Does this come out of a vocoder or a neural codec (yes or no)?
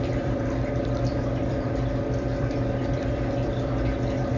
yes